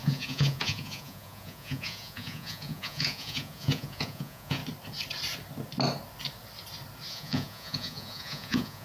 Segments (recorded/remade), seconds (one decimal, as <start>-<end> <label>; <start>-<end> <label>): 0.0-4.6 remade; 4.6-7.1 recorded; 7.1-8.8 remade